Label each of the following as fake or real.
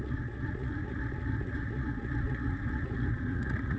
fake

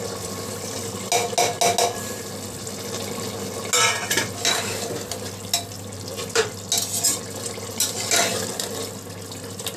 real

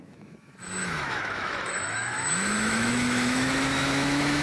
fake